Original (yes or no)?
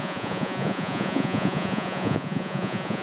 no